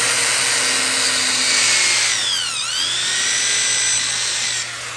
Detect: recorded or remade recorded